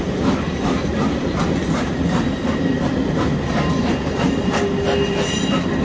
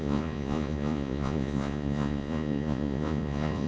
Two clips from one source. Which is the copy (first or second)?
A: second